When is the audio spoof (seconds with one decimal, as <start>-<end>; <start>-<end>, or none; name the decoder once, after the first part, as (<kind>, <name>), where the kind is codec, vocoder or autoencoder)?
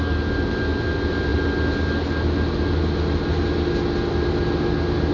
none